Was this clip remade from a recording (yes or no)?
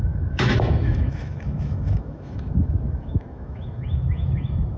yes